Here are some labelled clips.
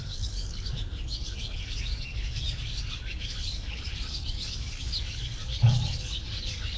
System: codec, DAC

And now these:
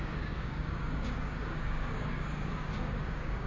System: codec, DAC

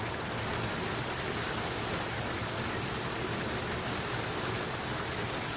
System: none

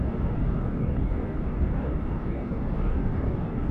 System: codec, DAC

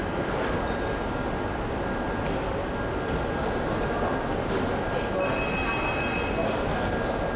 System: none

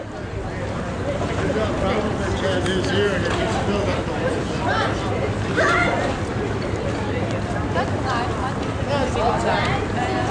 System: none